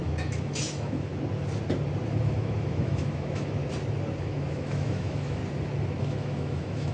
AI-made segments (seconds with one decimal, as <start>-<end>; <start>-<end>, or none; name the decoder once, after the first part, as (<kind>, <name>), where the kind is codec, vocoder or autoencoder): 0.0-1.1 (autoencoder, DAC-VAE); 2.2-3.6; 4.2-5.4; 6.0-6.9